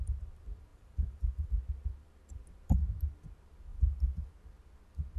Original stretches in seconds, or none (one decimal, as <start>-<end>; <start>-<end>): 0.0-0.7; 1.5-3.7; 4.3-5.2